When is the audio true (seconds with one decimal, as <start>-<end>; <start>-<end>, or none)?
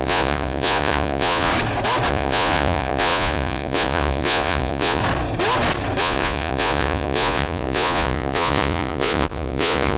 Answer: 1.5-2.1; 5.0-6.0